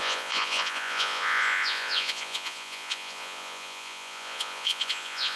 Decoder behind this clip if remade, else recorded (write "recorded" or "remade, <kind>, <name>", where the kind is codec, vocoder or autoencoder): remade, vocoder, Vocos